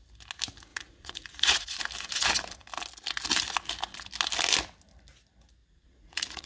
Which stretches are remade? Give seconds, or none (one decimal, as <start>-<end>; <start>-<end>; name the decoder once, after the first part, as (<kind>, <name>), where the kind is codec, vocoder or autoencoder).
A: 0.7-1.8 (vocoder, Vocos); 5.6-6.5